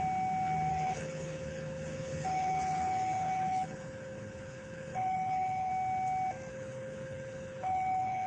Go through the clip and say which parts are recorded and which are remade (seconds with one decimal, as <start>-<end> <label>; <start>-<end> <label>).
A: 0.0-0.7 recorded; 0.7-5.7 remade; 5.7-6.5 recorded; 6.5-8.3 remade